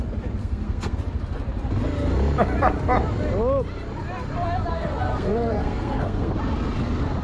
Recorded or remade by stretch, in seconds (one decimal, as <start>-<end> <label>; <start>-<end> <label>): 0.0-0.4 recorded; 0.4-1.0 remade; 1.0-4.7 recorded; 4.7-6.3 remade; 6.3-7.2 recorded